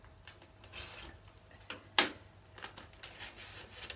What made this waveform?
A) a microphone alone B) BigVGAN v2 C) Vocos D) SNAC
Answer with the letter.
A